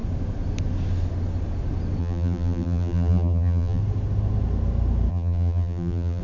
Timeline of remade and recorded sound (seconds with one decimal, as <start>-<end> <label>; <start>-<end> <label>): 0.0-2.0 recorded; 2.0-3.8 remade; 3.8-5.1 recorded; 5.1-6.2 remade